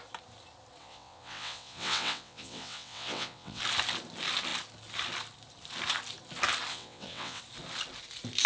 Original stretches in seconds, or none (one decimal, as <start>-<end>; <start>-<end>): 0.0-0.8; 3.6-6.7; 7.4-8.5